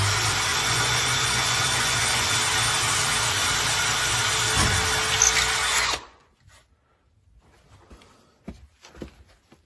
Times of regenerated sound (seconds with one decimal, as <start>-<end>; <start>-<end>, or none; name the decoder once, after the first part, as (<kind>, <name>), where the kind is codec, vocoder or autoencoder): 0.5-2.3 (vocoder, Vocos); 5.6-6.7